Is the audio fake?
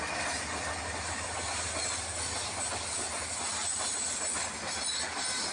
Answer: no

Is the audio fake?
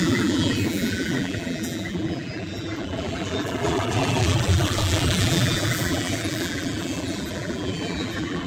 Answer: yes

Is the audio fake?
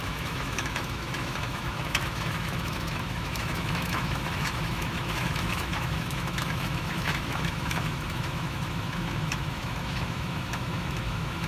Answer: yes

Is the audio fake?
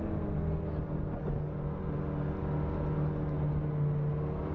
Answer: no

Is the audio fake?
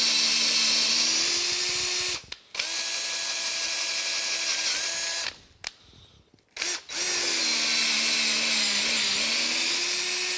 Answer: no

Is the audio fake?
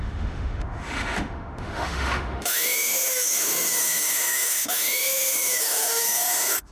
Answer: yes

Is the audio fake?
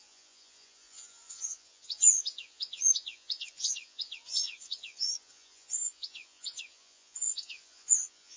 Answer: yes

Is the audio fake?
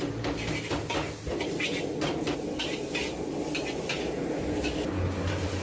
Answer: no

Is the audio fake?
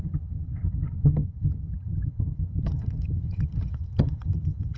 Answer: yes